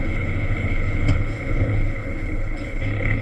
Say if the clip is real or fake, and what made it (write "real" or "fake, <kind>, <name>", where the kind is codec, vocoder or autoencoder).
fake, codec, HILCodec